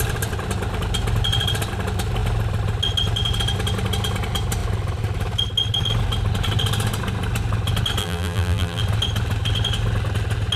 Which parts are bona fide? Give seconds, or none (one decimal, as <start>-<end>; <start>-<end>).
0.0-8.0; 8.8-10.6